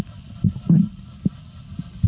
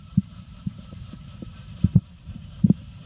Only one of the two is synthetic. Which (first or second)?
second